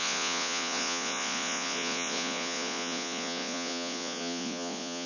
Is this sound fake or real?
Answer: fake